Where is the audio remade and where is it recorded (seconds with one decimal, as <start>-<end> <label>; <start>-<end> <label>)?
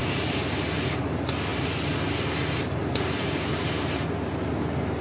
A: 0.0-0.6 remade; 0.6-1.5 recorded; 1.5-4.5 remade; 4.5-5.0 recorded